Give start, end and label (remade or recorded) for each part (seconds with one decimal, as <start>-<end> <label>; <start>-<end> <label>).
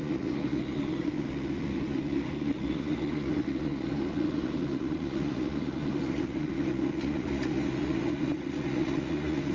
0.0-9.5 remade